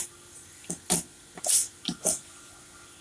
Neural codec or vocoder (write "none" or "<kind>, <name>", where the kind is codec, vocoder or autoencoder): none